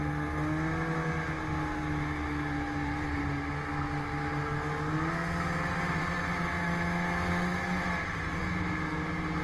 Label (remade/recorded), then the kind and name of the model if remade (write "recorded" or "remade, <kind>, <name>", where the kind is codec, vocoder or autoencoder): recorded